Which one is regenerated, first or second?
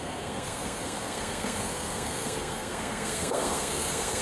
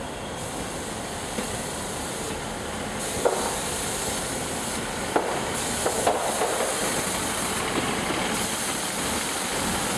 first